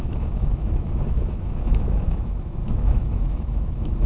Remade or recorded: remade